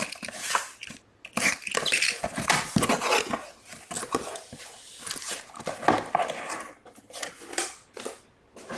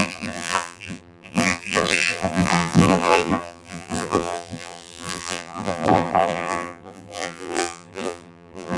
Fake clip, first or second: second